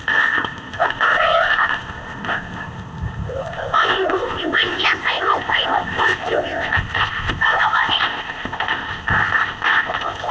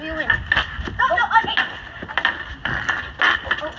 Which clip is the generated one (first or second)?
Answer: first